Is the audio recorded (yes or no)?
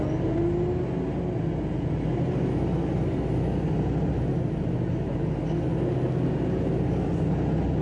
yes